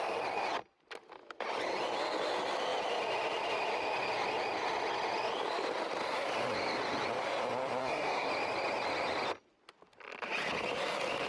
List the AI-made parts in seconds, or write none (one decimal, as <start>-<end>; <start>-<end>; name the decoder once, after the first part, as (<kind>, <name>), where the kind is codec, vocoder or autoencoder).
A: 7.8-8.3 (codec, SNAC)